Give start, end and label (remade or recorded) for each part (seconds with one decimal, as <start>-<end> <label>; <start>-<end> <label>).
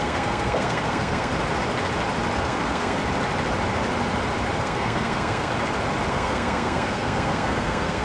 0.0-1.3 remade; 1.3-2.4 recorded; 2.4-3.0 remade; 3.0-4.6 recorded; 4.6-5.5 remade; 5.5-6.1 recorded; 6.1-8.0 remade